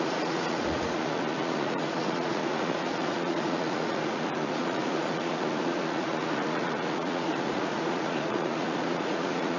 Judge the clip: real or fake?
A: fake